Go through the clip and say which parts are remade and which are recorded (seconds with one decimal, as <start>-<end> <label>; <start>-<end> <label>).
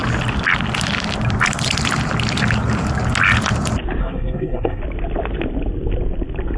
0.0-4.0 recorded; 4.0-4.8 remade; 4.8-6.6 recorded